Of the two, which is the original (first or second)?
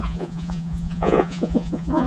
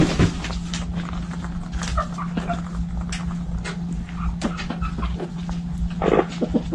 second